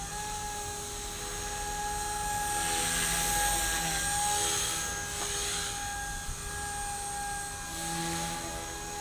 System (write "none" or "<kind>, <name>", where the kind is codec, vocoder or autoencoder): none